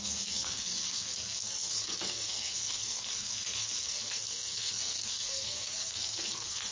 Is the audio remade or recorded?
remade